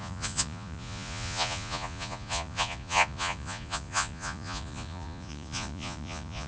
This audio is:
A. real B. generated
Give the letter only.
B